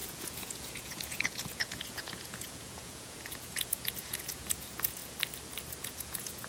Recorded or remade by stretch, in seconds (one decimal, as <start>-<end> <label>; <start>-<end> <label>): 0.0-5.0 remade; 5.0-5.8 recorded; 5.8-6.5 remade